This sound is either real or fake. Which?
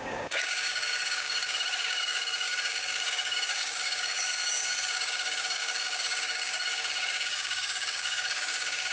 fake